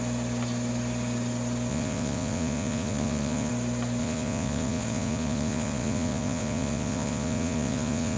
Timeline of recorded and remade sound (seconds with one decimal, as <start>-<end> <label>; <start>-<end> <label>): 0.0-1.7 recorded; 1.7-3.5 remade; 3.5-4.0 recorded; 4.0-8.2 remade